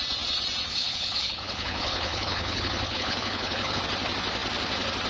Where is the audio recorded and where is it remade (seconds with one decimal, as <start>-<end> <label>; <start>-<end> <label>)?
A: 0.0-0.7 recorded; 0.7-3.8 remade; 3.8-5.1 recorded